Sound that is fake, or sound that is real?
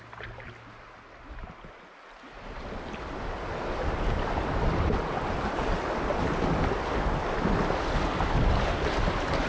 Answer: real